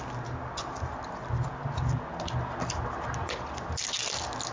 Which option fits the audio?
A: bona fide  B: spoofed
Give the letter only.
A